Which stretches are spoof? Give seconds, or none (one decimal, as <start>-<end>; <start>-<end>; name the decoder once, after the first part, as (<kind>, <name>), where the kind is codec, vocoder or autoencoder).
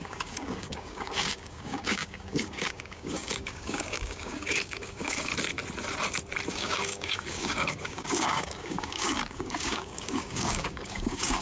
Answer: 0.0-5.3 (codec, DAC); 6.5-11.4